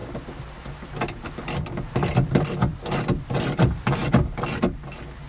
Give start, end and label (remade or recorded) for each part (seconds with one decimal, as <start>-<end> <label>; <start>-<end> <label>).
0.0-5.3 recorded